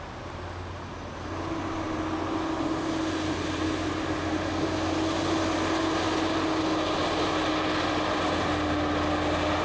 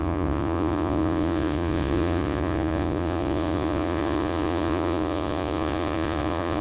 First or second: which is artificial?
second